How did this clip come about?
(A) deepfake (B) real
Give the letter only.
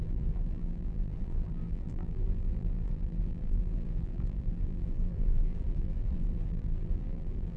A